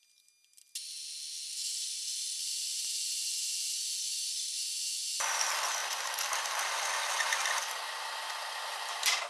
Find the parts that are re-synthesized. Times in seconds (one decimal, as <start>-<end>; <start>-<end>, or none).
2.7-4.0; 5.8-6.7